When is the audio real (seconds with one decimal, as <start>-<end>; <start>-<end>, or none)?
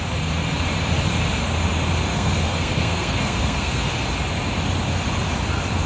0.0-2.1; 3.9-5.9